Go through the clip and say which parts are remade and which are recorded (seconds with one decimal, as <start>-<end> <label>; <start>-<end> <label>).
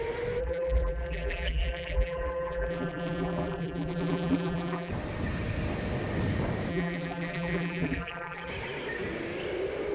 0.0-0.4 recorded; 0.4-4.9 remade; 4.9-6.7 recorded; 6.7-8.5 remade; 8.5-9.9 recorded